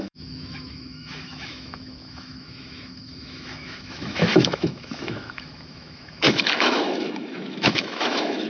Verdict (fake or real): fake